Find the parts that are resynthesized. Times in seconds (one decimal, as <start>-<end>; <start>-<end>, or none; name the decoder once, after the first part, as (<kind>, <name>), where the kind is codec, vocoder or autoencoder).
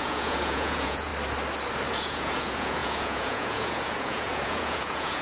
0.0-1.1 (vocoder, Vocos); 1.9-5.2